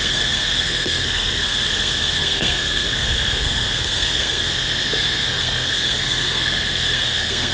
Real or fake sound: fake